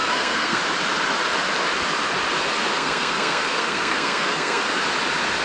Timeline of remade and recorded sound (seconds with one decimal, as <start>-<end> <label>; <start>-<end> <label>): 0.0-0.6 remade; 0.6-2.7 recorded; 2.7-4.6 remade; 4.6-5.4 recorded